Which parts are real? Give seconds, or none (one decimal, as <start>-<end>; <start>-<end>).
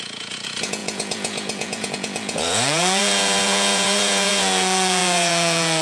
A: none